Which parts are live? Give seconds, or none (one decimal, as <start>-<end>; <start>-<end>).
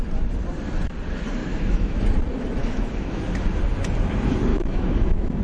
0.0-1.4; 2.0-2.6; 3.2-4.5